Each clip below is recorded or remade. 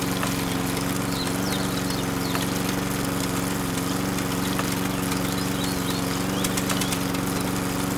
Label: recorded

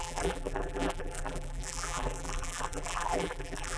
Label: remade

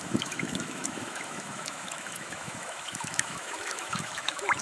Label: remade